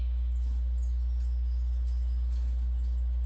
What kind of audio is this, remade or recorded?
recorded